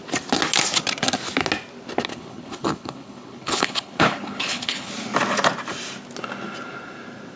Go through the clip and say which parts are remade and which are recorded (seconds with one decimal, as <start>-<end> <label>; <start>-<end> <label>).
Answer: 0.0-2.1 recorded; 2.1-4.9 remade; 4.9-7.4 recorded